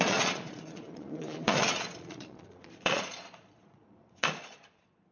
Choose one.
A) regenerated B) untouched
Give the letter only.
A